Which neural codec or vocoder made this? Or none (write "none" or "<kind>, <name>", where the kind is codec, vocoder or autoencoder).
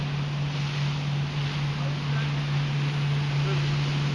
none